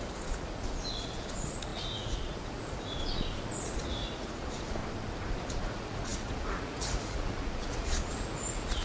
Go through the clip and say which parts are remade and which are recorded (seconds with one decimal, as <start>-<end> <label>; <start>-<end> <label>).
0.0-4.8 remade; 4.8-5.4 recorded; 5.4-8.8 remade